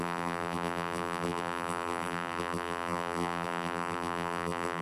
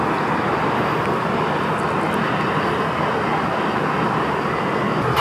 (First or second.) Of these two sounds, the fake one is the first